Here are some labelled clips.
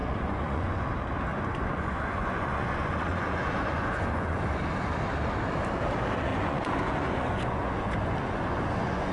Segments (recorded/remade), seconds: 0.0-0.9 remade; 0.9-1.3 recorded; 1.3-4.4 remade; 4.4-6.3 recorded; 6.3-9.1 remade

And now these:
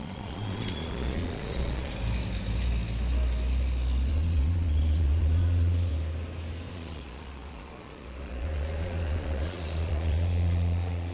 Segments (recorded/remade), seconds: 0.0-1.9 remade; 1.9-4.1 recorded; 4.1-5.9 remade; 5.9-6.7 recorded; 6.7-11.1 remade

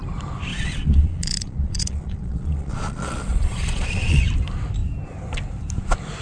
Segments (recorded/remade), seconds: 0.0-0.5 recorded; 0.5-4.2 remade; 4.2-6.2 recorded

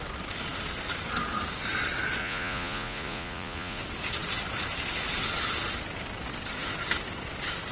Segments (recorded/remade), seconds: 0.0-2.2 recorded; 2.2-3.8 remade; 3.8-7.7 recorded